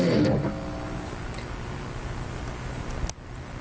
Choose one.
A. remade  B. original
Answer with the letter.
B